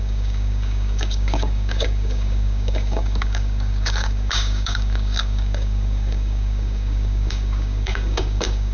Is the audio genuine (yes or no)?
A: no